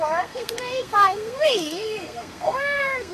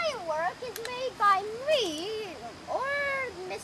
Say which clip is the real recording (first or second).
second